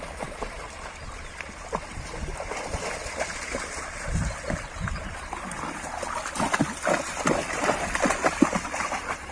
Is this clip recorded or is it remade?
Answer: recorded